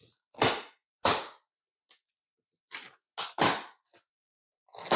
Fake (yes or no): no